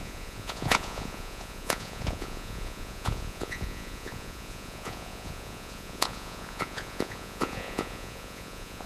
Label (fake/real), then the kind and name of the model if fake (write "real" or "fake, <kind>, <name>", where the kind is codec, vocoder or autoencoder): fake, vocoder, Vocos